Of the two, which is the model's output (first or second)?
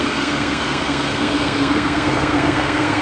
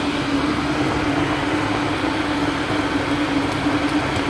first